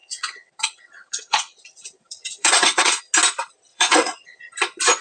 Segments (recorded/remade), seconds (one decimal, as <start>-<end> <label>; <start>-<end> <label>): 0.0-3.0 remade; 3.0-3.7 recorded; 3.7-4.4 remade; 4.4-5.0 recorded